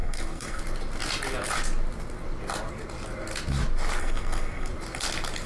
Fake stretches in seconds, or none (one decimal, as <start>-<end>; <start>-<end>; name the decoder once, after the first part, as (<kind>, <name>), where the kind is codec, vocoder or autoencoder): 0.0-0.6 (codec, SNAC); 4.0-4.7